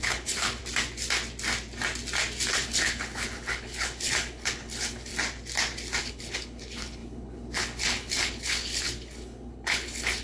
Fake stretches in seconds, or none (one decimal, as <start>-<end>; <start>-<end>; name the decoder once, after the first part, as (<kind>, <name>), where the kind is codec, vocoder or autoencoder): 0.0-0.6 (codec, HILCodec); 2.5-5.1; 6.0-10.2